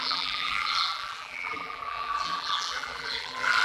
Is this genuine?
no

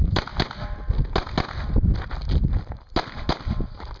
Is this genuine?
yes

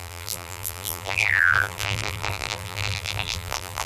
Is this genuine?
no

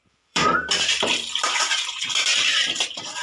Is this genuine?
no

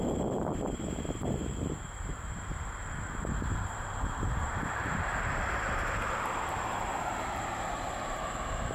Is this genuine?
no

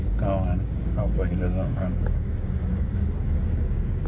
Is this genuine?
no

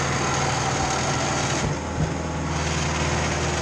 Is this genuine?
yes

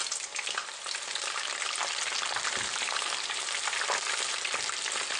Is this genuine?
yes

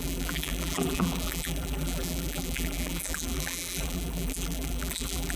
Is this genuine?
no